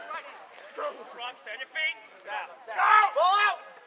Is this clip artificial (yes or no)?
no